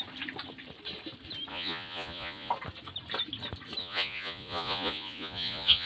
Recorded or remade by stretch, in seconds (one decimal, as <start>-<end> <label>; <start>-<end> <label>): 0.0-1.5 recorded; 1.5-2.5 remade; 2.5-3.8 recorded; 3.8-5.9 remade